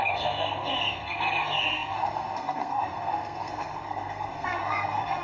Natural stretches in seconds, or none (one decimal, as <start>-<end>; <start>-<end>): none